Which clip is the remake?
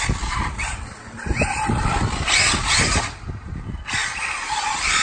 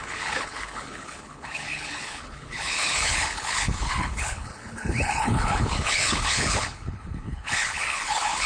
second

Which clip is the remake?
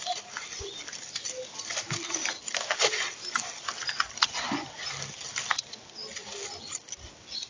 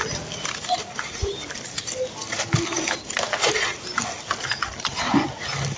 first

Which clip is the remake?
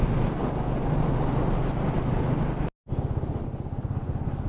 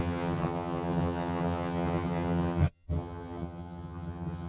second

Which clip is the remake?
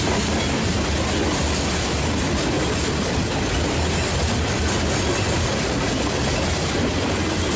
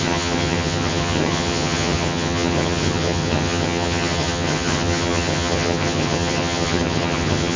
second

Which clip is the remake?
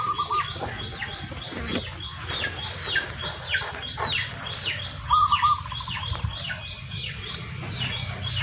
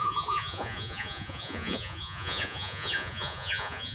second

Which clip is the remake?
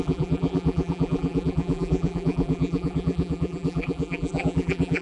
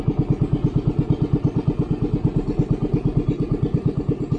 first